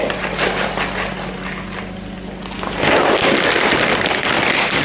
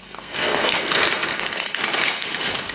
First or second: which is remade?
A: second